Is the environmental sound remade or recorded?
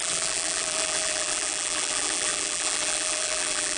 remade